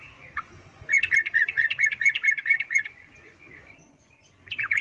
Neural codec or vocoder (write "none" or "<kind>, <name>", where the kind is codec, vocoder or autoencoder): vocoder, Vocos